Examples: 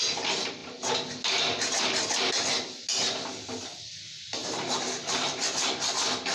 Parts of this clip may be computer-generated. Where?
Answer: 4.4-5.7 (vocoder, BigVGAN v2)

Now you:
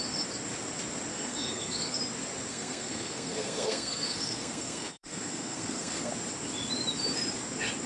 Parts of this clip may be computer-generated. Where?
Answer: 1.1-2.0 (codec, SNAC); 2.5-6.1

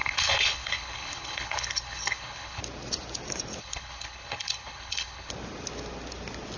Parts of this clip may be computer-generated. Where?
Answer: 0.0-2.6 (codec, HILCodec); 3.6-5.3

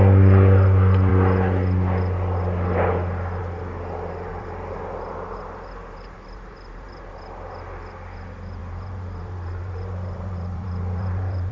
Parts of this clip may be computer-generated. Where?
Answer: 4.3-7.1 (vocoder, BigVGAN v2); 8.6-11.5

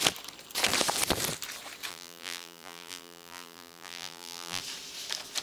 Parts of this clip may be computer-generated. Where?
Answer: 1.9-4.6 (vocoder, BigVGAN v2)